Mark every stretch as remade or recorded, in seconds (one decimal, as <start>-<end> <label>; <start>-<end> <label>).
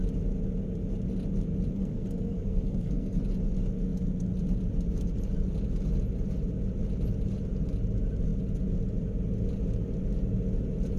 0.0-1.8 recorded; 1.8-3.2 remade; 3.2-11.0 recorded